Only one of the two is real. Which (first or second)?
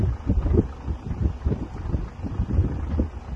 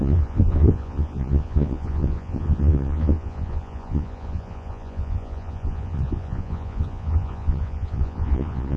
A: first